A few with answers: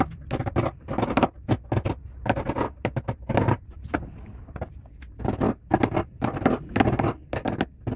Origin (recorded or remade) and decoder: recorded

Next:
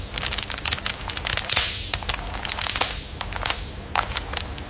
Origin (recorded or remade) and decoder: recorded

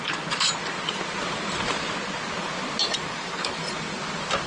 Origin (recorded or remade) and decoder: recorded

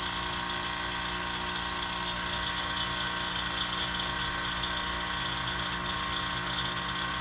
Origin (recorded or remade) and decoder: recorded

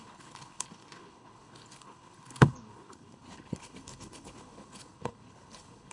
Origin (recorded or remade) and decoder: remade, codec, HILCodec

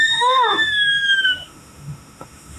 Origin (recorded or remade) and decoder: remade, autoencoder, DAC-VAE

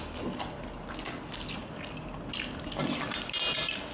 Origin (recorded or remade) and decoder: recorded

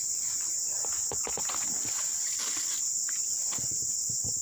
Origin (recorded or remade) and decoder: recorded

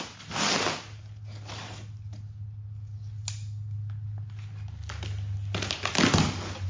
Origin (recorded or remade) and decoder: recorded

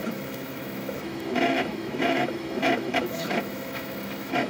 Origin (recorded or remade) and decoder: remade, autoencoder, DAC-VAE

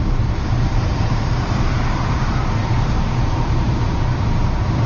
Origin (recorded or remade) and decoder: remade, vocoder, BigVGAN v2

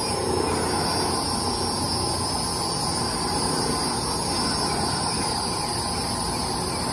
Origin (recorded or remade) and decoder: recorded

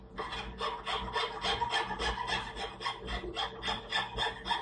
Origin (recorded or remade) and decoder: recorded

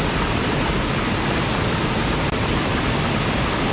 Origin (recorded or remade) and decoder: recorded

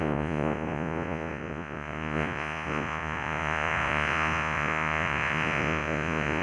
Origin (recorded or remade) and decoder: remade, vocoder, Vocos